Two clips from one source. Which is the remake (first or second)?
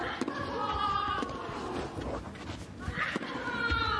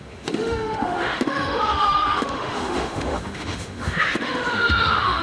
second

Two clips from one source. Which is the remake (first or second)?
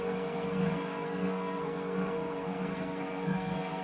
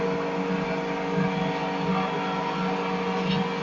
first